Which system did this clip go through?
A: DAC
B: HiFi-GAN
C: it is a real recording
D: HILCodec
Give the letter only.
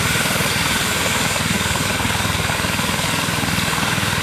A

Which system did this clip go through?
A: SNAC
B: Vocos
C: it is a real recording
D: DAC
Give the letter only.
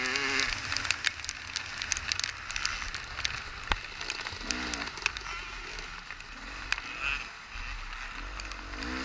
C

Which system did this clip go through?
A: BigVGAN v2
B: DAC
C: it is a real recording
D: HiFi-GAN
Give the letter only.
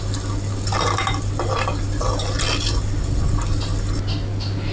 C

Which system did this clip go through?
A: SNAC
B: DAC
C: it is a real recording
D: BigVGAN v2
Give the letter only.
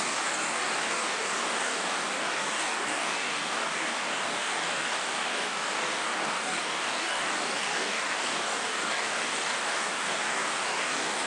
B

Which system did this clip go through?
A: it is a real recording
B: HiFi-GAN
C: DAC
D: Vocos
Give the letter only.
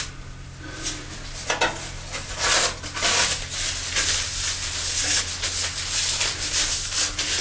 A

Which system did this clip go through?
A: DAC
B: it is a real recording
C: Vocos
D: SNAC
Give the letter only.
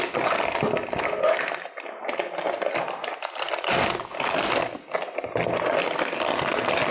B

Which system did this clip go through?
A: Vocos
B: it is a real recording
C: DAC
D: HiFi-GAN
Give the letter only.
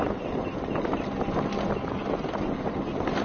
B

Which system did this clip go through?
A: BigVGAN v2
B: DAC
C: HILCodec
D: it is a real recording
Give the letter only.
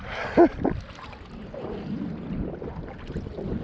D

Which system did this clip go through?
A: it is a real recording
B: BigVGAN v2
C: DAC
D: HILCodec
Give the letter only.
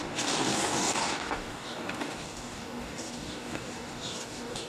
C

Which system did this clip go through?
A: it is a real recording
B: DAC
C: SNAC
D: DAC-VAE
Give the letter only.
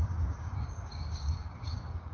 B